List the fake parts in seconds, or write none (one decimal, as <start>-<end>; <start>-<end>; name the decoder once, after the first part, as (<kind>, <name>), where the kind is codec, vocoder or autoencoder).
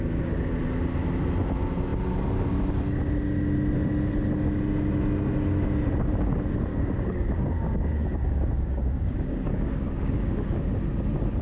6.7-10.6 (codec, DAC)